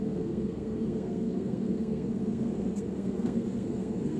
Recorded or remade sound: remade